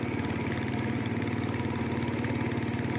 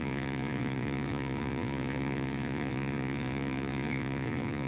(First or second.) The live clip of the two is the first